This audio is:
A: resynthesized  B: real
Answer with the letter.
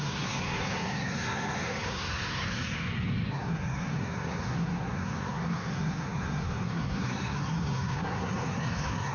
A